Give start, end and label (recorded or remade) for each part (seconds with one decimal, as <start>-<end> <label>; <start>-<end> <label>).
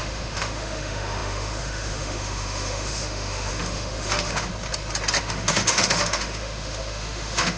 0.0-4.5 remade; 4.5-5.2 recorded; 5.2-7.6 remade